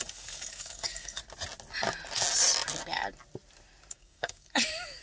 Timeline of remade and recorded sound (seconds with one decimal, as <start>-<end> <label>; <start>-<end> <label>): 0.0-1.2 remade; 1.2-3.9 recorded; 3.9-5.0 remade